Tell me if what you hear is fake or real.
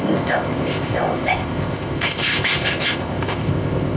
fake